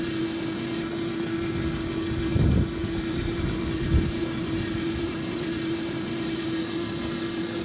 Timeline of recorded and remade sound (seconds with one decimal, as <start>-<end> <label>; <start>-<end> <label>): 0.0-2.3 recorded; 2.3-6.6 remade; 6.6-7.6 recorded

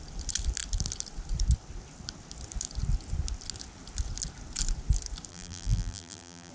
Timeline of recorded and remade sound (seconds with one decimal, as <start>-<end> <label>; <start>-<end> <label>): 0.0-5.3 recorded; 5.3-6.5 remade

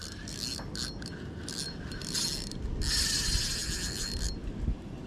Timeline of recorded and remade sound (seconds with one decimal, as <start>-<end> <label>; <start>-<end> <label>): 0.0-3.6 recorded; 3.6-4.3 remade; 4.3-5.1 recorded

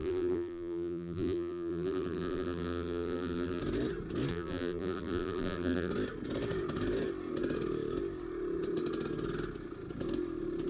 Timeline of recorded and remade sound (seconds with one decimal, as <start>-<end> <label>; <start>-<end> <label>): 0.0-3.6 remade; 3.6-4.3 recorded; 4.3-5.9 remade; 5.9-10.7 recorded

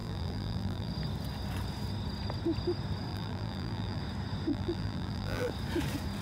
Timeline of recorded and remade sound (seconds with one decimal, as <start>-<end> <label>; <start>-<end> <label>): 0.0-0.9 remade; 0.9-3.1 recorded; 3.1-4.0 remade; 4.0-4.5 recorded; 4.5-5.5 remade; 5.5-6.2 recorded